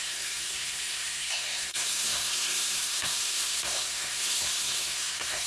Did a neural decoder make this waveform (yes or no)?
yes